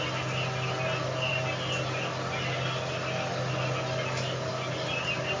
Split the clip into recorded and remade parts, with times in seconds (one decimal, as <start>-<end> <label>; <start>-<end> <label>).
0.0-5.4 recorded